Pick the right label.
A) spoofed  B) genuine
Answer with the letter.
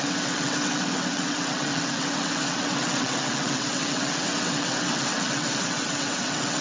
A